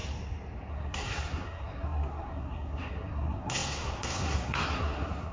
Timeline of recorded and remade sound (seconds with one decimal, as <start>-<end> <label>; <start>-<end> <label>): 0.0-0.7 recorded; 0.7-5.3 remade